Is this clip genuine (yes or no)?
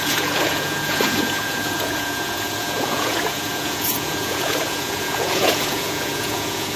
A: no